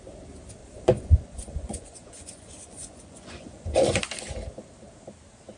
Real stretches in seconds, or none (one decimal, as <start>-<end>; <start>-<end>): 0.0-0.6; 4.0-5.6